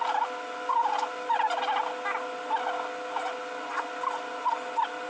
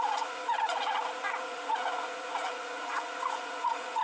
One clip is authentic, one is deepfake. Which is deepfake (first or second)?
second